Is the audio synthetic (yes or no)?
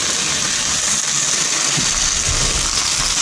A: no